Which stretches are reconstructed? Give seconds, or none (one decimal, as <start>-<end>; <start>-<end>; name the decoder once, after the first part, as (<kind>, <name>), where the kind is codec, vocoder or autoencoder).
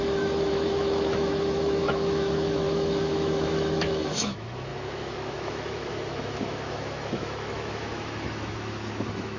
0.0-9.4 (autoencoder, DAC-VAE)